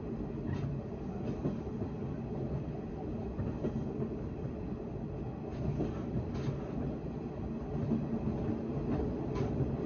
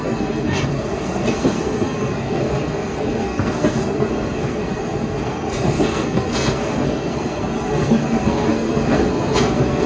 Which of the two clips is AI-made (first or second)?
second